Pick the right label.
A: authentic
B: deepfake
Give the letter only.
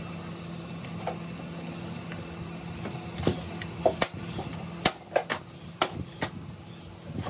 A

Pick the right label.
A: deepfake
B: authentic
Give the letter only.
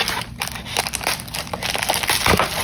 B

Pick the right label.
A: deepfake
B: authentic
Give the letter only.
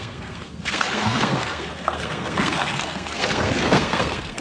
A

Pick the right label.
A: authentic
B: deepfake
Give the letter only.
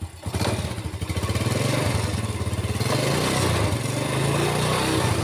A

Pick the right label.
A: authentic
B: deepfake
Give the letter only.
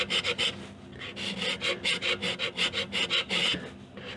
A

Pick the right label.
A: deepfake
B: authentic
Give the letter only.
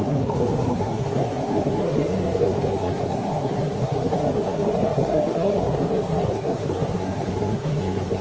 A